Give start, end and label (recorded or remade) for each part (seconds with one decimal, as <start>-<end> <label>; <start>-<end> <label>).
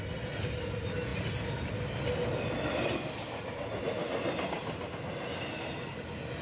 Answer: 0.0-6.4 recorded